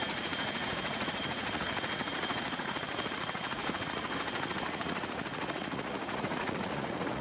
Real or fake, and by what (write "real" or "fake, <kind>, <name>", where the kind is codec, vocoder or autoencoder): fake, vocoder, Vocos